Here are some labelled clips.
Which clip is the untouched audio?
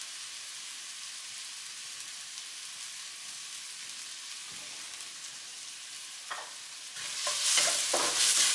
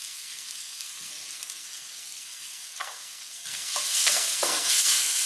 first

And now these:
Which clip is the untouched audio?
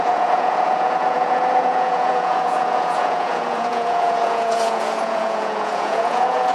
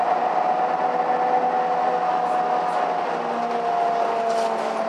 second